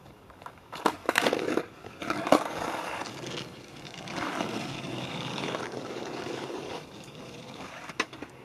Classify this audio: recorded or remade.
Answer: remade